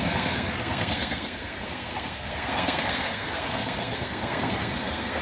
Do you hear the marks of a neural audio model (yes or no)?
yes